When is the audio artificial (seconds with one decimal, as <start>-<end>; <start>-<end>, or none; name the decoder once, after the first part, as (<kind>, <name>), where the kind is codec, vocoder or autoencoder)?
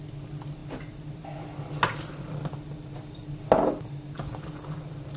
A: none